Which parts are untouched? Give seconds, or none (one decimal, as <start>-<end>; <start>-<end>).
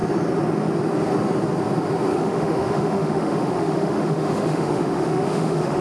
0.0-2.1